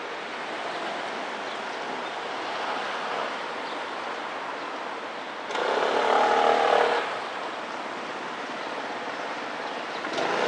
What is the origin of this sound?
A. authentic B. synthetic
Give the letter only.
A